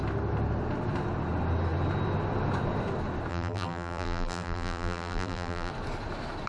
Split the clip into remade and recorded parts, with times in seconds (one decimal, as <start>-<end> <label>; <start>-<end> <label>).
0.0-3.3 recorded; 3.3-5.7 remade; 5.7-6.5 recorded